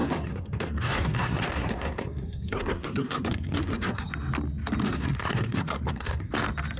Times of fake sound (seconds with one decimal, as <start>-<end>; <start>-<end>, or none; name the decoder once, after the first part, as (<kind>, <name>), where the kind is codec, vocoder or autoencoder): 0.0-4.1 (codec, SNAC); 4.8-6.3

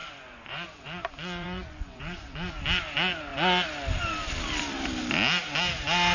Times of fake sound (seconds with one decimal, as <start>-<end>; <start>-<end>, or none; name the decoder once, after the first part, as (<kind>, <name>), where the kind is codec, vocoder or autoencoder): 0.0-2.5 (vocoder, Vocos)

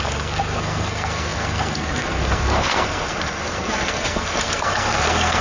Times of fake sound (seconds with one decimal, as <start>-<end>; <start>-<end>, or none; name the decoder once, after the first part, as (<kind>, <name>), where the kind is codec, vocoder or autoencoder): 0.0-5.4 (codec, SNAC)

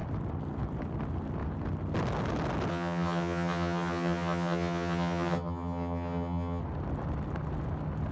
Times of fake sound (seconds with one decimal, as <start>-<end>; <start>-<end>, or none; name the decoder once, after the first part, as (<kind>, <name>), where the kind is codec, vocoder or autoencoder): 2.7-6.6 (vocoder, HiFi-GAN)

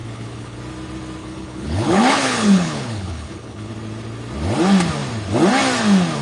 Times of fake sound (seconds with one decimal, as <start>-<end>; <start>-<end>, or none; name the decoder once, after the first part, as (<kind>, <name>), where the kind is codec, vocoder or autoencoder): 0.0-0.6 (codec, HILCodec); 1.2-3.7